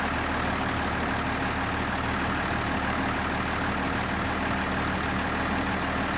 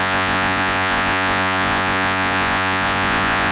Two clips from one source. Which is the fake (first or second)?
second